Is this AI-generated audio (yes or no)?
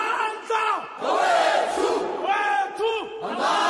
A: yes